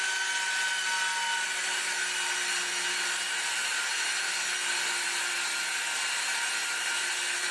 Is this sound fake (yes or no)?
no